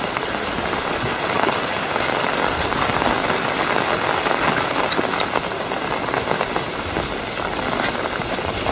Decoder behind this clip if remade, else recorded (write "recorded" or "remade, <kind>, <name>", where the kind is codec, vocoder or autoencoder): recorded